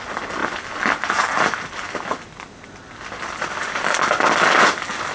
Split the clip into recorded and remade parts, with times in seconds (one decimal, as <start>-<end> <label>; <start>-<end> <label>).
0.0-5.1 recorded